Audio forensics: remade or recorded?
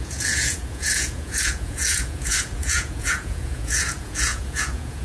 remade